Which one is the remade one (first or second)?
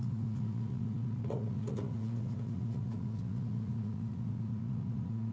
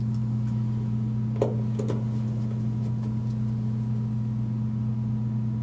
first